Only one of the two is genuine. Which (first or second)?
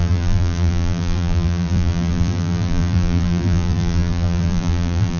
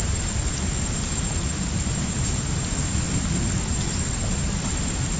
second